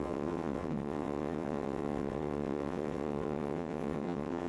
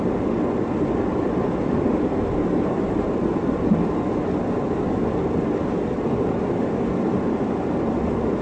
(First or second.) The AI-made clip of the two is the first